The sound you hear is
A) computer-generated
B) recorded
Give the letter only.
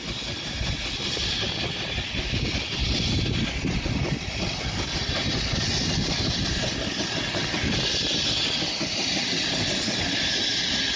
B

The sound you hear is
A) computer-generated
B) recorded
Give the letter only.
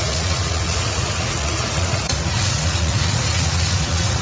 A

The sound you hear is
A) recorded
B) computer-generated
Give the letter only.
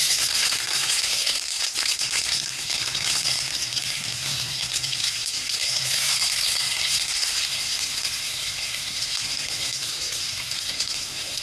B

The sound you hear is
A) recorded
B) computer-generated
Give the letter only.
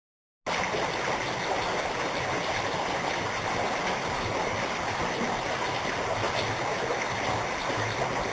A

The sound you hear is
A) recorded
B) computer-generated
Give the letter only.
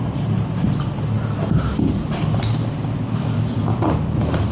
A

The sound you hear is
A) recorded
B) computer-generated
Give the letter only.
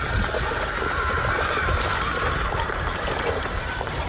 B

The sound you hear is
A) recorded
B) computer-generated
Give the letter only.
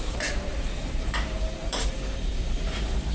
B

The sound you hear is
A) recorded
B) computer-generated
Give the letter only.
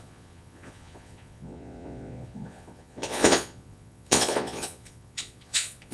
B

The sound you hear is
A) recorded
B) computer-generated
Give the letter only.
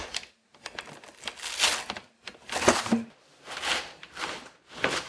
A